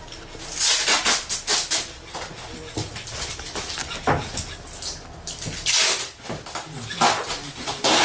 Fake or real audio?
real